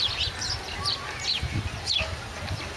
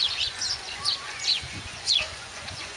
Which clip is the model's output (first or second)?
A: second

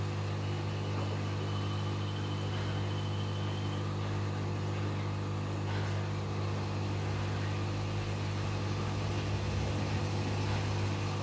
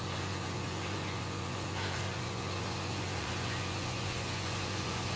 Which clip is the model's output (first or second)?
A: second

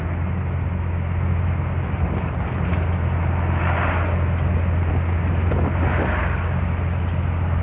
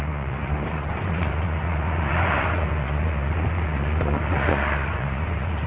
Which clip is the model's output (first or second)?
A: second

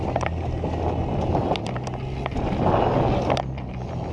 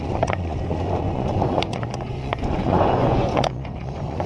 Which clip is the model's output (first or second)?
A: second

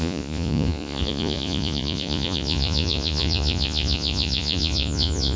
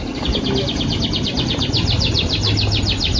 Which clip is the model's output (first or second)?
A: first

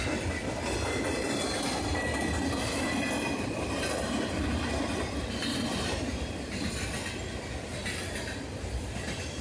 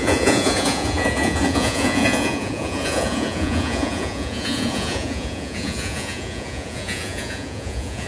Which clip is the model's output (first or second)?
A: second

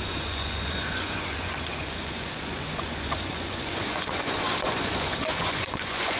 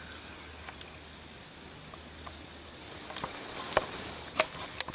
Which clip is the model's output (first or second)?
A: first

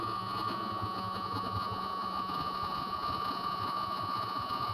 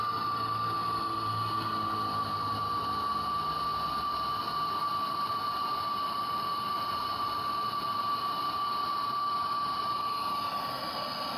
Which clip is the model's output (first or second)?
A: first